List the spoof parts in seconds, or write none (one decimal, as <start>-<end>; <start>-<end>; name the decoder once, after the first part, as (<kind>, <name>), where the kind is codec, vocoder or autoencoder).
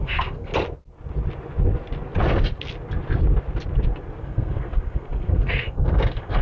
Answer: 0.0-0.5 (codec, SNAC); 4.2-6.4